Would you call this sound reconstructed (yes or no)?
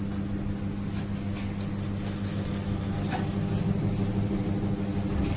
no